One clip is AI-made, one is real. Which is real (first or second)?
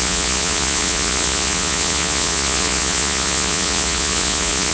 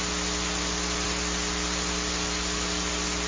second